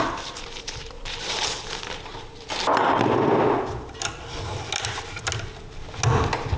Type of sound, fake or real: real